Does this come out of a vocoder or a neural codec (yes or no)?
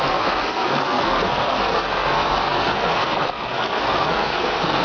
yes